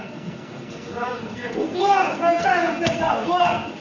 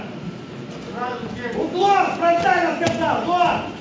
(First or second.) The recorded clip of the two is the second